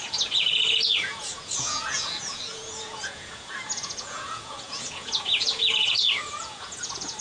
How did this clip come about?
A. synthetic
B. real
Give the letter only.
A